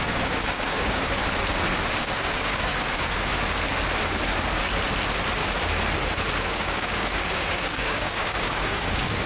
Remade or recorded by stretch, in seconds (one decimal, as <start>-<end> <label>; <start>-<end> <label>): 0.0-1.2 remade; 1.2-2.0 recorded; 2.0-3.3 remade; 3.3-6.4 recorded; 6.4-9.3 remade